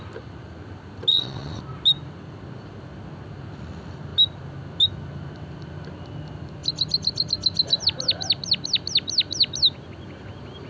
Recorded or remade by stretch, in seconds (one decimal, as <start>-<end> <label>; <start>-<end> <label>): 0.0-1.1 recorded; 1.1-1.6 remade; 1.6-10.7 recorded